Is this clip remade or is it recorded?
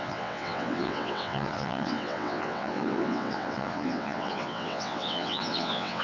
remade